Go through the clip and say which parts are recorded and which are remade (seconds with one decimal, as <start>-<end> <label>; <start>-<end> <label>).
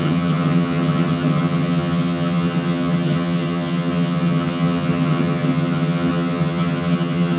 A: 0.0-7.4 remade